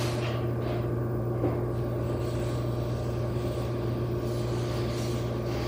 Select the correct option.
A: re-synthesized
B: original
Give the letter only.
B